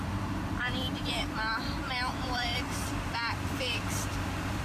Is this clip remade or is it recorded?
remade